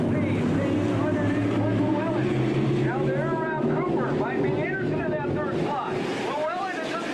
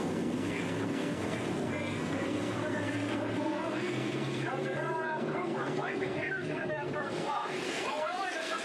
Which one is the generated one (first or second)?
second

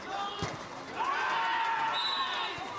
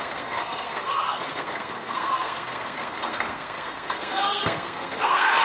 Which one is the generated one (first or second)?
second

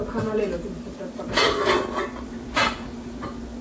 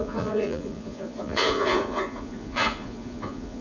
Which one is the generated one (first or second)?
second